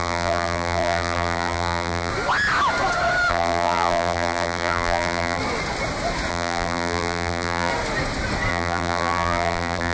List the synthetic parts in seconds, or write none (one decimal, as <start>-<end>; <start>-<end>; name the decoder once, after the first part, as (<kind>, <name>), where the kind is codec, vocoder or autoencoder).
0.0-2.1 (vocoder, BigVGAN v2); 3.3-5.4; 6.3-7.7; 8.5-9.9